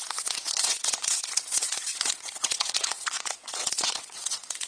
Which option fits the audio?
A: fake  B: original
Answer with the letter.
A